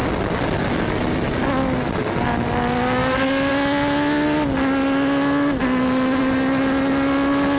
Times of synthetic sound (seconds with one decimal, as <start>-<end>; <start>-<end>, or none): none